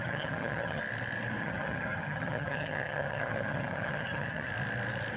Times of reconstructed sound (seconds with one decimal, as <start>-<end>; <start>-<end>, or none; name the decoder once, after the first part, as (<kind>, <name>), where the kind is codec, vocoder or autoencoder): 0.0-0.8 (vocoder, HiFi-GAN); 1.4-4.5